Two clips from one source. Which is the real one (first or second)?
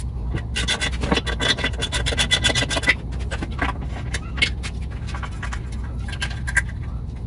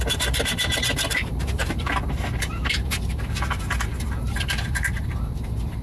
first